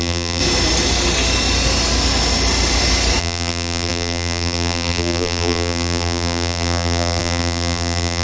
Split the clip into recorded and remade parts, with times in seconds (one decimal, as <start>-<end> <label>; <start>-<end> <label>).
0.0-0.4 remade; 0.4-3.2 recorded; 3.2-8.2 remade